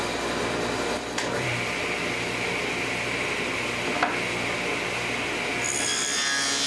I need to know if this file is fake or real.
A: real